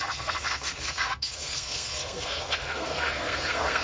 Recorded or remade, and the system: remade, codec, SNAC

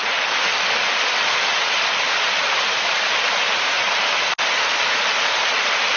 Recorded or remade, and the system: recorded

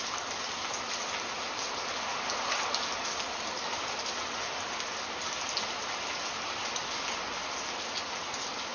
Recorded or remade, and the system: recorded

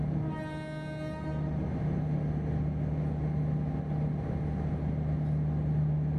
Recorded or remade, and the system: recorded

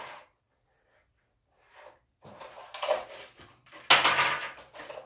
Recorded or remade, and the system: recorded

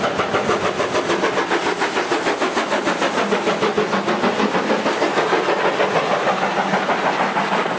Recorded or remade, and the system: recorded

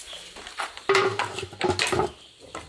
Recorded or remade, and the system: recorded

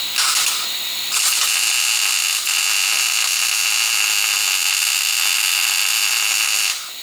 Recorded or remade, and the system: recorded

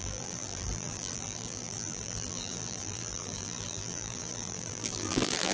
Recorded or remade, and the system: remade, vocoder, BigVGAN v2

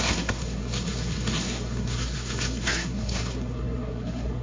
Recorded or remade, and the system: remade, codec, SNAC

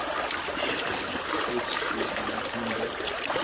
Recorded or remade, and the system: recorded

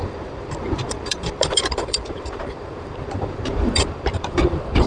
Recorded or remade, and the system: remade, vocoder, BigVGAN v2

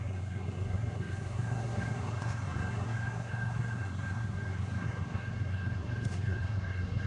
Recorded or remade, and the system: remade, codec, SNAC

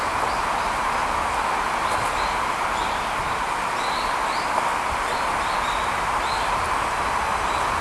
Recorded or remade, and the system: recorded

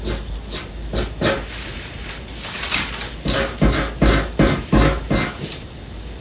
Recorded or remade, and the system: recorded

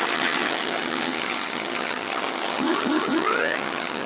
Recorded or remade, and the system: remade, vocoder, HiFi-GAN